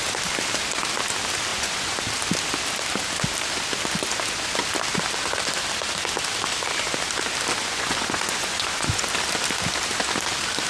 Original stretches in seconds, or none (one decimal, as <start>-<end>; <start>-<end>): 0.0-1.5; 2.0-7.6; 9.0-10.7